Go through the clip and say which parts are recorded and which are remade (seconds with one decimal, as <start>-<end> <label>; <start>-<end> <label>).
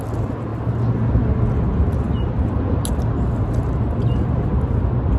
0.0-5.2 recorded